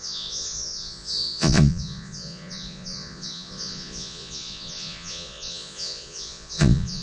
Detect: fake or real fake